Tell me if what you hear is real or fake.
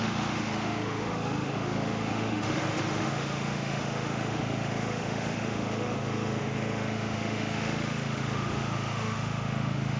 fake